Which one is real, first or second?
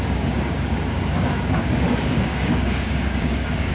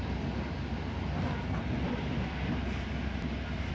second